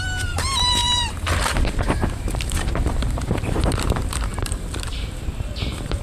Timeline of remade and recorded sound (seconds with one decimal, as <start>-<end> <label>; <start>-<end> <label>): 0.0-6.0 remade